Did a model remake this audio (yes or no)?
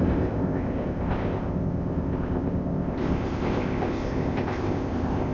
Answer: yes